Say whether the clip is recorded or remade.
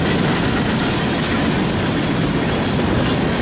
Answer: recorded